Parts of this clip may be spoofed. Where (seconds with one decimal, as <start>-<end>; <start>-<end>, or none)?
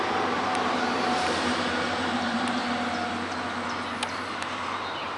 0.0-2.6; 4.3-5.2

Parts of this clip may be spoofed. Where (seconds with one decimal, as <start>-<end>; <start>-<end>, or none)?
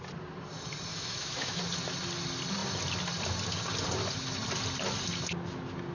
0.9-1.6